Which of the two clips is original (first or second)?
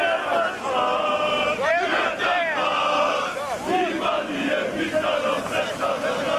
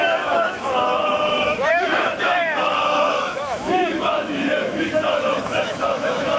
first